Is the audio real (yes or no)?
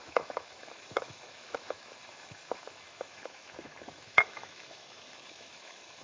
no